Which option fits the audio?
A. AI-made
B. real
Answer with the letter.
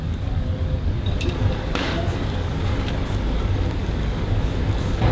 A